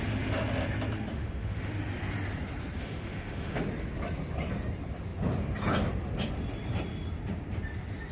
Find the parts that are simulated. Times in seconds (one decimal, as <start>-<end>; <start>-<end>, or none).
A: 1.1-1.7; 2.8-3.6